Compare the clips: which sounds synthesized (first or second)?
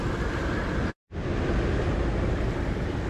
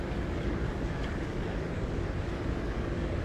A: second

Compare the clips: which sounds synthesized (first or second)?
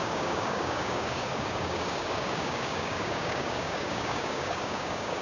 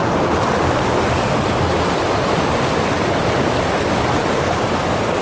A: first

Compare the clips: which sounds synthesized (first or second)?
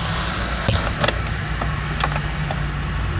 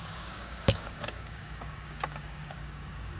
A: second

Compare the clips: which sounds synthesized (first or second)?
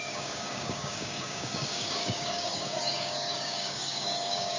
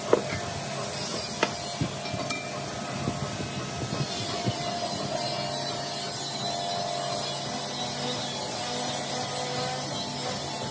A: first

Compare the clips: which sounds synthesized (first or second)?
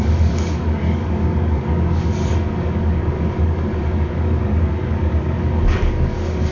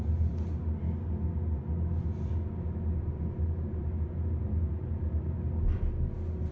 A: first